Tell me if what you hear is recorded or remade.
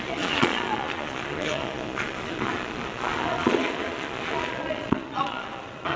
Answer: remade